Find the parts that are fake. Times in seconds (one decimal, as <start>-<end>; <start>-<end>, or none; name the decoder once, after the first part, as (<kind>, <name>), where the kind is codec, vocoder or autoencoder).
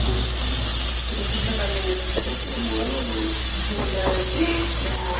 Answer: 2.1-2.6 (vocoder, Vocos); 3.4-4.2